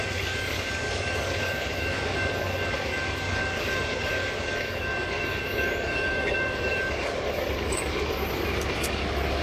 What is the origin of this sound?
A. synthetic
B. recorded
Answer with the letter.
A